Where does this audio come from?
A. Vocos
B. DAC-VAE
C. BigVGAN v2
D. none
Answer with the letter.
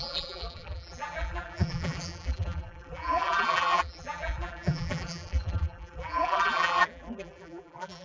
C